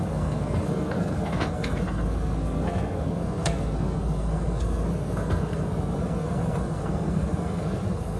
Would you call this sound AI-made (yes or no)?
yes